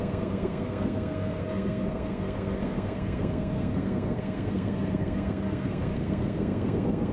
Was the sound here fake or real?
fake